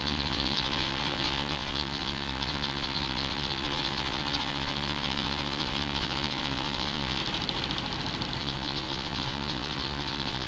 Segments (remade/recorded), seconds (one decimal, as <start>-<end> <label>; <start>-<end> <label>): 0.0-7.2 remade; 7.2-8.4 recorded; 8.4-10.5 remade